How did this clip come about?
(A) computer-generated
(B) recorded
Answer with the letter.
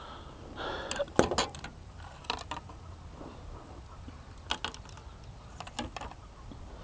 B